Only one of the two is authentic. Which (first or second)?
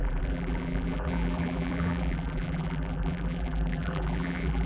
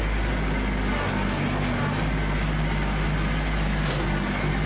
second